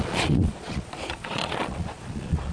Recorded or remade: remade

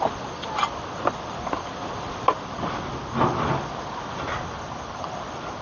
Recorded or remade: recorded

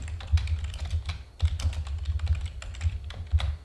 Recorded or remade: recorded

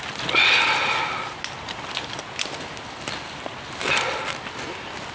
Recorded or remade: recorded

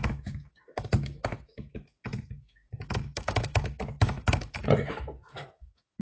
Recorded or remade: remade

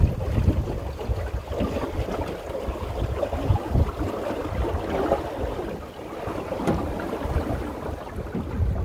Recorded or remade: recorded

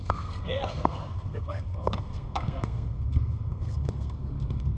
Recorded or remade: remade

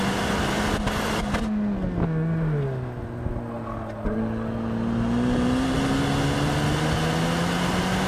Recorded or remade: recorded